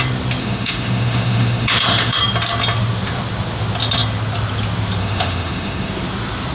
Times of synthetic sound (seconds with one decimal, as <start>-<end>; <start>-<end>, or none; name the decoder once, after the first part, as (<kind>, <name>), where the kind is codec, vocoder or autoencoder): 0.4-2.2 (autoencoder, DAC-VAE); 5.0-5.9